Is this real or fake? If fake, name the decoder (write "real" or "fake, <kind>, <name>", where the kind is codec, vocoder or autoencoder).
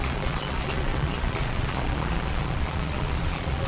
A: fake, vocoder, Vocos